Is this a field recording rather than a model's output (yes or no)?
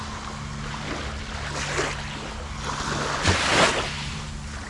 yes